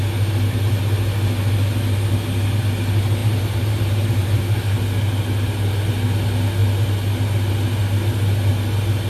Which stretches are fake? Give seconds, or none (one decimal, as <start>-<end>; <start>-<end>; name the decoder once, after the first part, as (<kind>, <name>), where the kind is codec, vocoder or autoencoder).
3.2-4.4 (vocoder, BigVGAN v2)